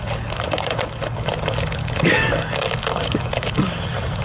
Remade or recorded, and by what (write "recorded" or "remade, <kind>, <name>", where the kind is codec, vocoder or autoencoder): remade, codec, DAC